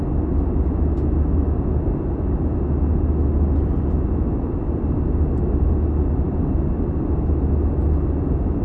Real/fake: real